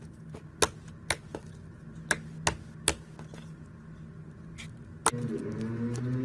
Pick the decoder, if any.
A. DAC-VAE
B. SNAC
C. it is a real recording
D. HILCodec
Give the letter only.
C